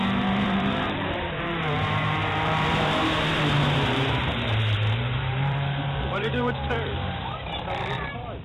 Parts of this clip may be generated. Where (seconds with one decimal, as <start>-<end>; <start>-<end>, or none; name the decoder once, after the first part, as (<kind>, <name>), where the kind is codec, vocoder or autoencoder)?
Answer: 0.0-8.4 (vocoder, BigVGAN v2)

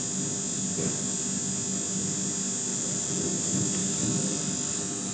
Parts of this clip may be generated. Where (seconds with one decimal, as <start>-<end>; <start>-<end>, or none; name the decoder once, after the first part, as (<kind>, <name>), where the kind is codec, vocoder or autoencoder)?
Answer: 2.7-3.2 (vocoder, BigVGAN v2)